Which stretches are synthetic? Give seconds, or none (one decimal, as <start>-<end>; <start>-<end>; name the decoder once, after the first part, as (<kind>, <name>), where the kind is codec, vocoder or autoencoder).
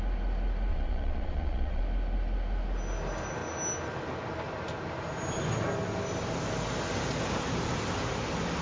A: 0.7-1.8 (vocoder, Vocos)